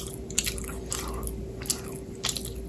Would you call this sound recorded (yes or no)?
yes